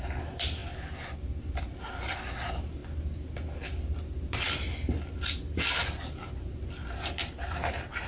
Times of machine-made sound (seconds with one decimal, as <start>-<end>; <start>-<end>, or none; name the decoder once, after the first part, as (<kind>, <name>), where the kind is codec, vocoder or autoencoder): none